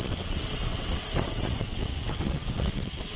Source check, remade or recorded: remade